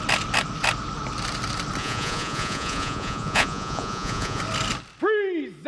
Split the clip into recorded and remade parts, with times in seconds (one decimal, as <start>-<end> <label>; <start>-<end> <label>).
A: 0.0-1.8 recorded; 1.8-4.4 remade; 4.4-5.7 recorded